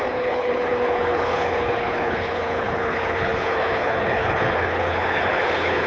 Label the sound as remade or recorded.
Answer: remade